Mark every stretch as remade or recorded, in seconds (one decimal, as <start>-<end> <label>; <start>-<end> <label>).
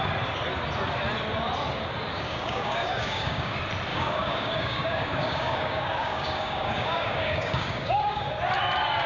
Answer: 0.0-2.1 recorded; 2.1-3.5 remade; 3.5-3.9 recorded; 3.9-8.2 remade; 8.2-9.1 recorded